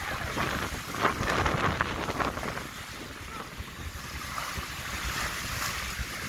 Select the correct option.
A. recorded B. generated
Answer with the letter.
A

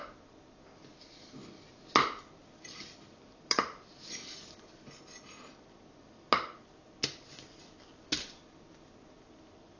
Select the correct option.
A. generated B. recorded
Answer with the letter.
B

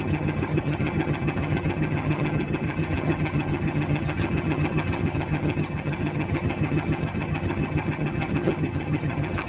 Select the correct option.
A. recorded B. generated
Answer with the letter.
B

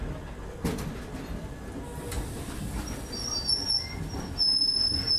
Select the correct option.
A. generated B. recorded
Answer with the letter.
B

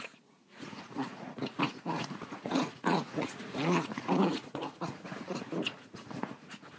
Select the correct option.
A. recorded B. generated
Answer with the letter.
B